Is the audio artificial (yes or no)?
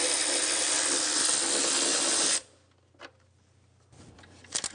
no